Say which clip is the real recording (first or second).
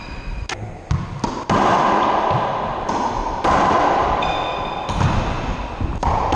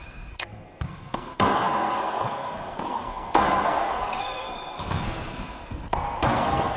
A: first